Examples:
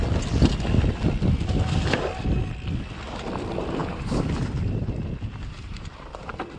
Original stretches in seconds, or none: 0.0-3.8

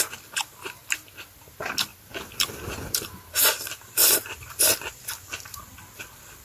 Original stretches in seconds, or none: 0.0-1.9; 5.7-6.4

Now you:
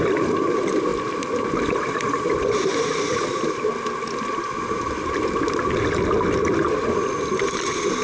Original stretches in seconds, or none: none

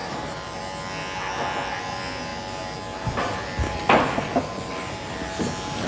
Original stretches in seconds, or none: 0.6-5.9

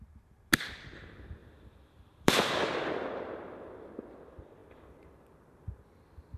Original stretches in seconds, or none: 0.0-1.4; 3.1-4.6